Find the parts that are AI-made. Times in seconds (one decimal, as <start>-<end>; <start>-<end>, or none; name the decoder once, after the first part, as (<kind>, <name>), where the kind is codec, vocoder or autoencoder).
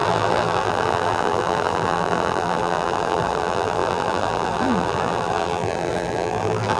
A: 0.0-6.8 (vocoder, BigVGAN v2)